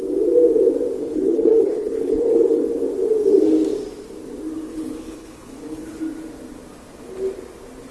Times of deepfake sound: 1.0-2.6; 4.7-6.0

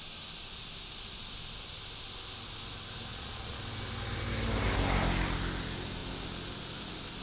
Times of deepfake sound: 3.1-3.6